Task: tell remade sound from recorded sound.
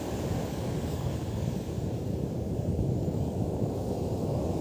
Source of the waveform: remade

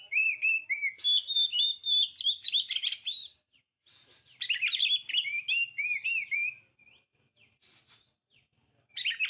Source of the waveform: recorded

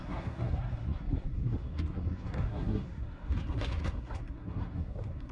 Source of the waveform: remade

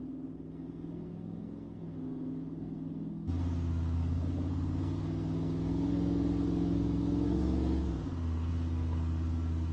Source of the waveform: remade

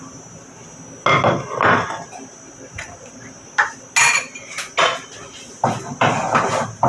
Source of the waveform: recorded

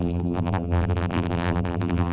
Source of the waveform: remade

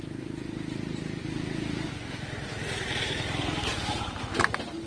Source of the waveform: recorded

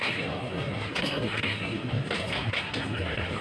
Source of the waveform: remade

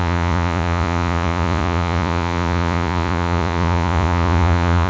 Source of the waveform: remade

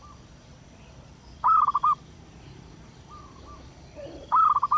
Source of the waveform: recorded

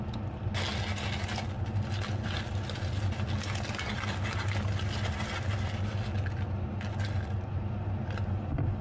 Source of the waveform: recorded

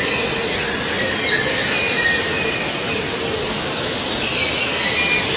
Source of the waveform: recorded